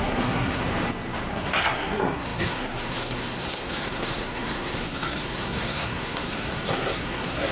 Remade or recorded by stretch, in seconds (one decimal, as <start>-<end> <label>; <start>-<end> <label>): 0.0-0.6 remade; 0.6-1.3 recorded; 1.3-7.5 remade